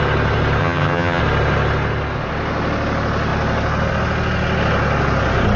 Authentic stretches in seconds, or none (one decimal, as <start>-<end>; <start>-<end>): 0.0-0.6; 1.2-5.6